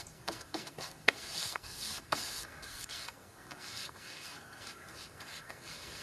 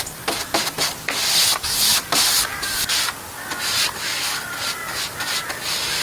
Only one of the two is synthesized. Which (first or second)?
first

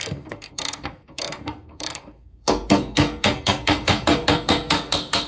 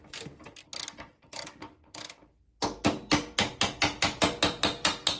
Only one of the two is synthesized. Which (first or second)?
first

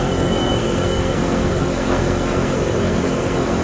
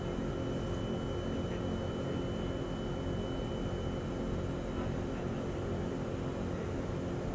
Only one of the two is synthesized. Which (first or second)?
first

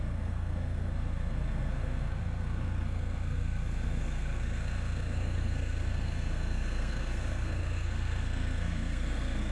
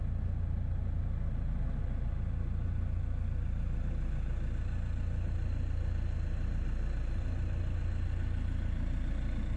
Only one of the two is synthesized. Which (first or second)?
first